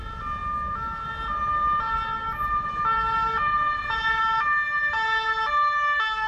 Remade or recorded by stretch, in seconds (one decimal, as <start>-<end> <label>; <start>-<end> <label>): 0.0-6.3 recorded